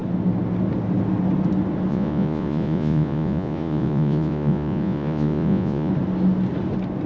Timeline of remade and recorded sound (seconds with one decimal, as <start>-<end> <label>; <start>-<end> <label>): 0.0-1.9 recorded; 1.9-5.9 remade; 5.9-7.1 recorded